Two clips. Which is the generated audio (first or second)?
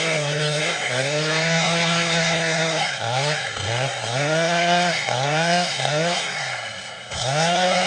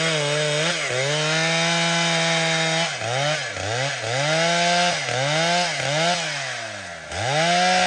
first